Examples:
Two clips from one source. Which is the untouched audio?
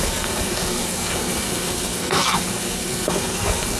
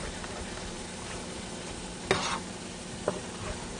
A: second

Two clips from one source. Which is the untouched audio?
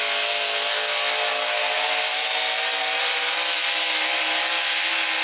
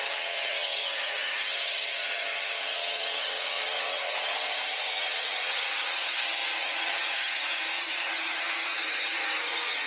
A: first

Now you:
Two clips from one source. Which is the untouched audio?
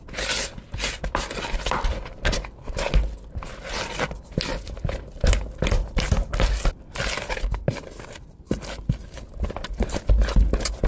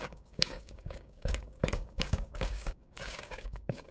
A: first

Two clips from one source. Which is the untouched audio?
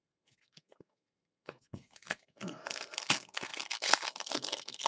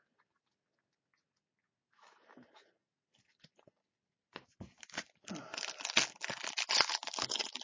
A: second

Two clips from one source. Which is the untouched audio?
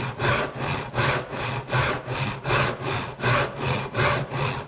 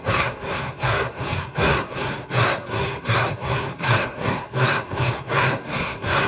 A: first